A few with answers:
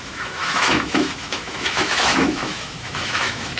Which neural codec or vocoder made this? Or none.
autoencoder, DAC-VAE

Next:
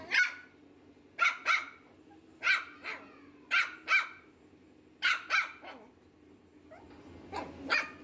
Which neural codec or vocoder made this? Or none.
none